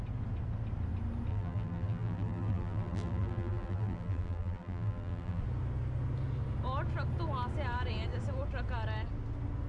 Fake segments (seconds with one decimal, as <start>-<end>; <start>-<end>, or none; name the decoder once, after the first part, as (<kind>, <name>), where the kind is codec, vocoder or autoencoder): 1.3-5.4 (vocoder, BigVGAN v2)